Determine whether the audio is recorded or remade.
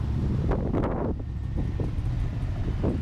recorded